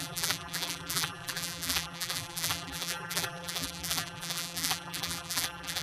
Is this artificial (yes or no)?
yes